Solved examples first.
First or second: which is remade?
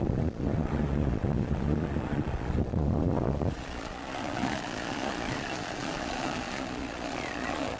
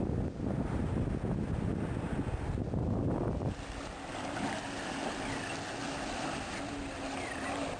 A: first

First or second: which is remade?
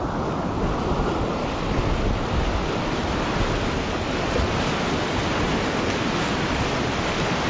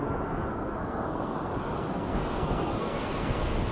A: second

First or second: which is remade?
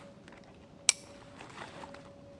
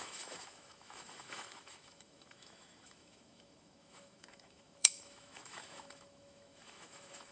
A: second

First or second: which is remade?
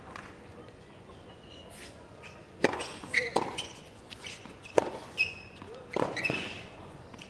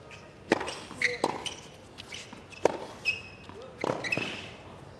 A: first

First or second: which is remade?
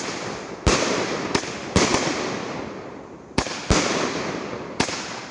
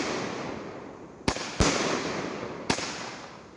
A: first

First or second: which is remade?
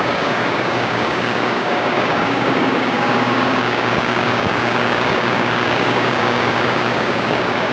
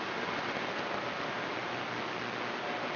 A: first